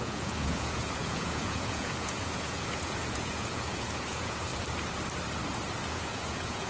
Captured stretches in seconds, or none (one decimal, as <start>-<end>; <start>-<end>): 4.5-5.9